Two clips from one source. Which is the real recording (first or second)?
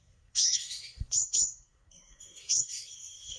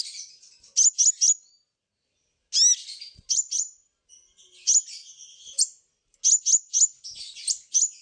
second